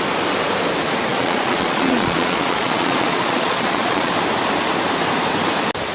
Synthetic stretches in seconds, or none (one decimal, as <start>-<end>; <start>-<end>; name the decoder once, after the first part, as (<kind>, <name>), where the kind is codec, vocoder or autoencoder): 1.1-4.1 (vocoder, Vocos)